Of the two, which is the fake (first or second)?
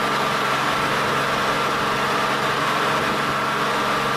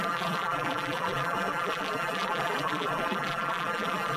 second